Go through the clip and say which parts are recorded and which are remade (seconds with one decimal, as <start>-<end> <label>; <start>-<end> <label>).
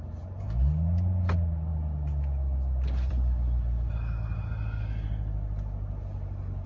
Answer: 0.0-6.7 recorded